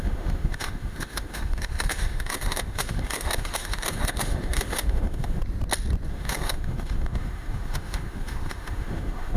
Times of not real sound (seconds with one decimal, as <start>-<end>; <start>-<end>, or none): 0.0-5.4; 6.1-9.4

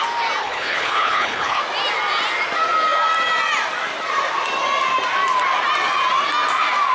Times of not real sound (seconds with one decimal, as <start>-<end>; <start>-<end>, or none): 0.4-1.6

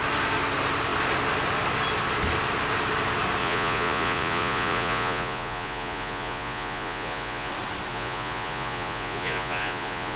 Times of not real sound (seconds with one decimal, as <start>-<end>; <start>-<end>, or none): 3.4-7.5; 7.9-10.2

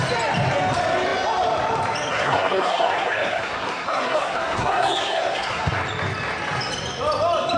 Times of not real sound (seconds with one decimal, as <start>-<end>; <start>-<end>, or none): 2.1-5.8